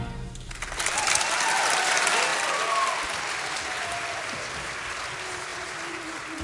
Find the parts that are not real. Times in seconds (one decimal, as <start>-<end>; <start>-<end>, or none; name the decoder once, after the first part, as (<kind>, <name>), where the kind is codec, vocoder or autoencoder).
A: none